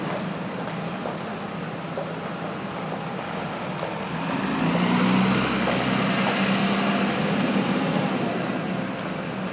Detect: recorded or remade recorded